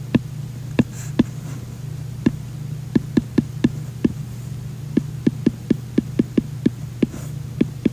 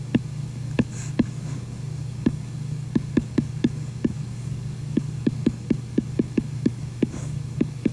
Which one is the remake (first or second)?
second